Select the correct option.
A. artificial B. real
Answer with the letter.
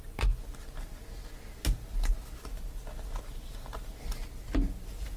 B